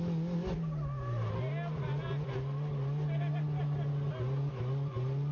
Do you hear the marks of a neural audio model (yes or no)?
no